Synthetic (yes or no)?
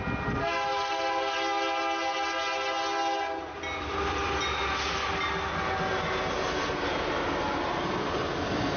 no